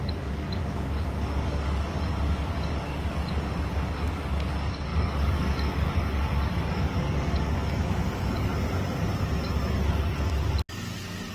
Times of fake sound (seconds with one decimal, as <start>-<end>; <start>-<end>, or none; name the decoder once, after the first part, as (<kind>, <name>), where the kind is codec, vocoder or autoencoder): 0.0-8.5 (codec, DAC)